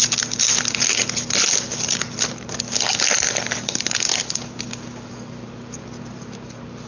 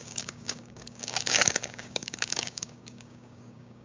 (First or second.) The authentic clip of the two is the first